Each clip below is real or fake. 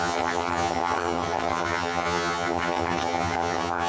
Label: fake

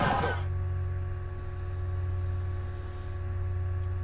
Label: real